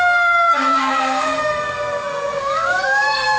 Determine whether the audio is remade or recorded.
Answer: remade